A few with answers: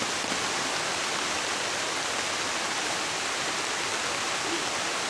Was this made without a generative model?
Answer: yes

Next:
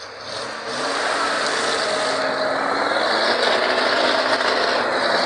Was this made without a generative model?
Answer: yes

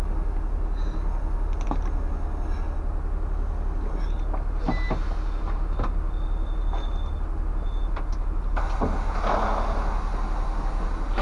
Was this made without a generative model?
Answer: yes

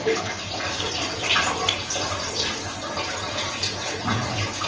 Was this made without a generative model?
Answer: yes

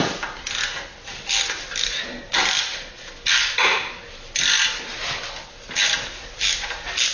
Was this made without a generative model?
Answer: yes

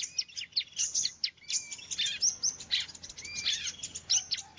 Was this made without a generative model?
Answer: yes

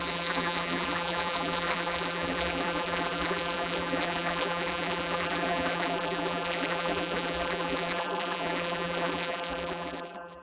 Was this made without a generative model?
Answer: no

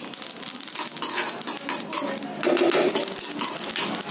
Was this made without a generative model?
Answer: yes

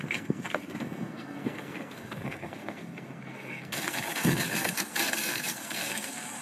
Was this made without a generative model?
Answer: no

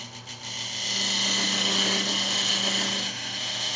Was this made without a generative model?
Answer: yes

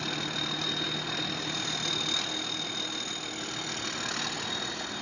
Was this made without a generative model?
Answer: yes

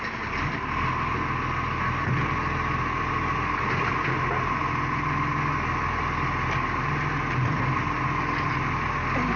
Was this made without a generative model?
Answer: yes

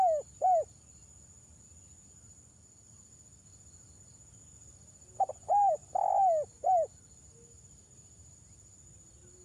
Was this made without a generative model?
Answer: yes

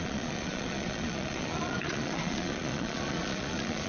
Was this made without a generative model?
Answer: no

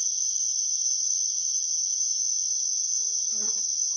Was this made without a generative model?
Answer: yes